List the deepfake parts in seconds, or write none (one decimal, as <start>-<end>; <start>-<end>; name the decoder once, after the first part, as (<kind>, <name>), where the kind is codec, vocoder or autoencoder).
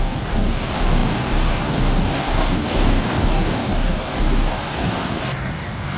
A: 0.0-6.0 (codec, DAC)